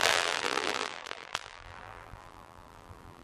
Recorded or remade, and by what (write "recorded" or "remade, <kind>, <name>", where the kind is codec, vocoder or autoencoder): remade, vocoder, BigVGAN v2